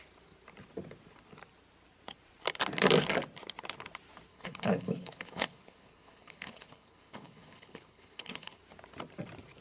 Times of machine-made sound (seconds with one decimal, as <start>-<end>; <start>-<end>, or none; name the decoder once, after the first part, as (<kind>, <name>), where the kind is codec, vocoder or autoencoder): 4.3-8.6 (codec, HILCodec)